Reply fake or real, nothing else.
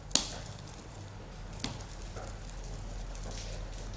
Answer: real